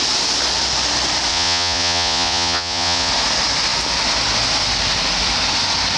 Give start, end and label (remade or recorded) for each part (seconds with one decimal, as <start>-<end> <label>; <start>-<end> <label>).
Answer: 0.0-1.3 recorded; 1.3-3.1 remade; 3.1-6.0 recorded